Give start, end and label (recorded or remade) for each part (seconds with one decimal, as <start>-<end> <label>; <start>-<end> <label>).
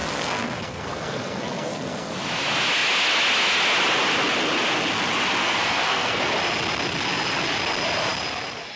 0.0-2.1 remade; 2.1-5.4 recorded; 5.4-6.3 remade; 6.3-8.8 recorded